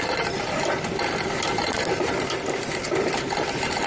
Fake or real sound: real